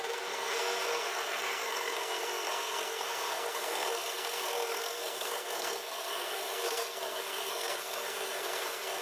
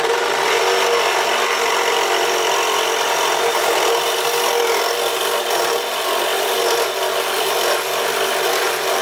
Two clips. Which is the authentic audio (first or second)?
second